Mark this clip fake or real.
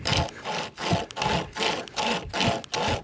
real